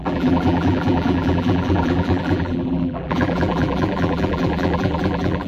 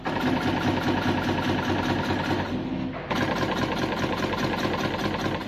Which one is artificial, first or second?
first